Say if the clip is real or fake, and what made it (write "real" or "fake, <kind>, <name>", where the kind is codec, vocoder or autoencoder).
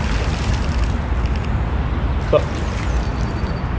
real